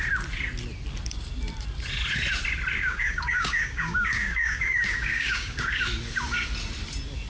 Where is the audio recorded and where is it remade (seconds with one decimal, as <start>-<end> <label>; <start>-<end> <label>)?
0.0-2.8 recorded; 2.8-5.8 remade; 5.8-7.3 recorded